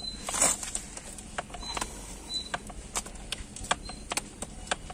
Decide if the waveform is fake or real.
real